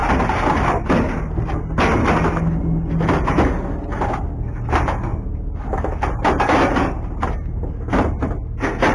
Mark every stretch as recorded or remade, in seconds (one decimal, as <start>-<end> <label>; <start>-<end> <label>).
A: 0.0-8.9 recorded